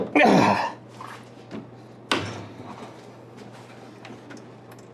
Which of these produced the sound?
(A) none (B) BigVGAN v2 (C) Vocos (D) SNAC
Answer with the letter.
A